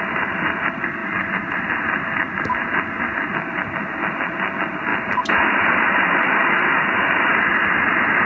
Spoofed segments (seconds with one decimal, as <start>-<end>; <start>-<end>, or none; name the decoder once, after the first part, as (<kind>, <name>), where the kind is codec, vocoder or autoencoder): none